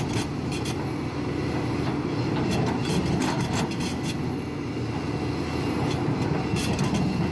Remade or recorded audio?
recorded